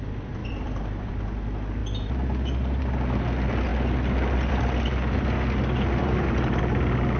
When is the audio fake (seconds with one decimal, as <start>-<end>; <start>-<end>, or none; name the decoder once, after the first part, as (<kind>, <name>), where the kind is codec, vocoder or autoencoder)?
0.4-1.1 (vocoder, BigVGAN v2); 6.0-6.6